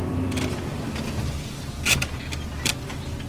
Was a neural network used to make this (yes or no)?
no